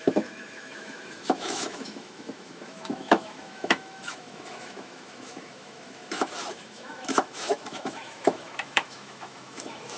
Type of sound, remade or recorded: remade